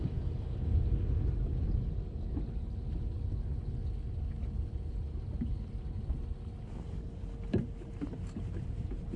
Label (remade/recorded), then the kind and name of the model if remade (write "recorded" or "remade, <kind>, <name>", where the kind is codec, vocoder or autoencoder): recorded